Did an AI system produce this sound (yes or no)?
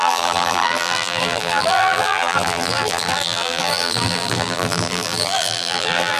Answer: yes